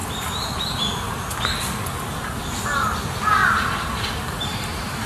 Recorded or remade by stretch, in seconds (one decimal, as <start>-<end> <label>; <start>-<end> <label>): 0.0-3.4 recorded; 3.4-5.1 remade